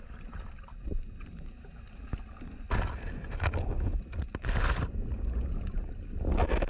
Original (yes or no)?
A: yes